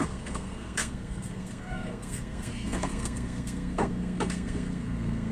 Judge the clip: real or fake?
fake